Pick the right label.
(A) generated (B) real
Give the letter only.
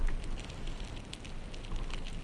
B